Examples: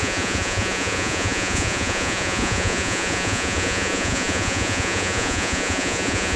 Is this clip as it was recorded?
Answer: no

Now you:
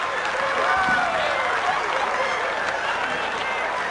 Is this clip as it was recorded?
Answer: yes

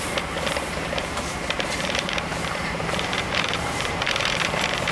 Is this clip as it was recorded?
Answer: no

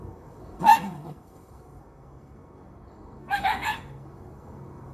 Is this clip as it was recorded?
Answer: no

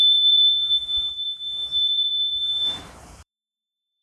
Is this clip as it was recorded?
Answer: no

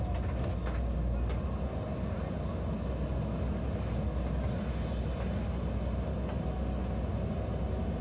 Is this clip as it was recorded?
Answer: yes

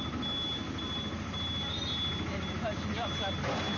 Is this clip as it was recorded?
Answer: yes